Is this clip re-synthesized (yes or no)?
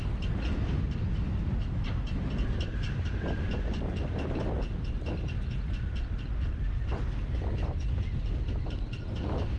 no